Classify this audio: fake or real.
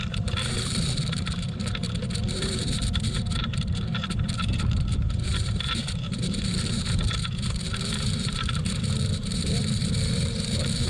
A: fake